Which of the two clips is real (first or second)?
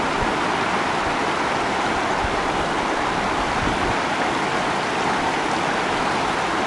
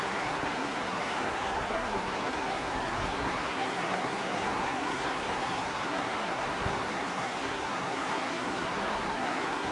first